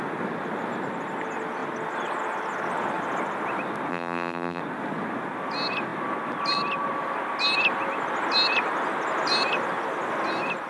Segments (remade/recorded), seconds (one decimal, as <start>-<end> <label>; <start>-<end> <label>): 0.0-3.9 recorded; 3.9-4.6 remade; 4.6-10.7 recorded